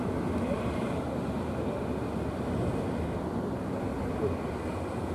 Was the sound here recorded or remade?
recorded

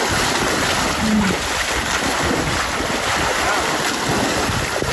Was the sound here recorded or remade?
recorded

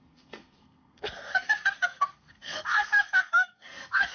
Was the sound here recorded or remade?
remade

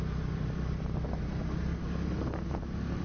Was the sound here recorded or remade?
recorded